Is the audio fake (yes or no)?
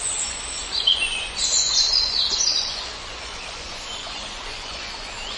yes